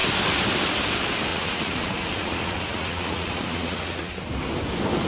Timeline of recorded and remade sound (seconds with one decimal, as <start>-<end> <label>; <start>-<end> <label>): 0.0-1.3 recorded; 1.3-4.2 remade; 4.2-5.1 recorded